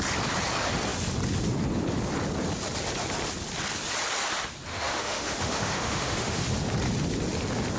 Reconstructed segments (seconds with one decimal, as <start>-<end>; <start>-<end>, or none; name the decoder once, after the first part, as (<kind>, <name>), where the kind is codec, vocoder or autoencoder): 4.7-6.5 (autoencoder, DAC-VAE)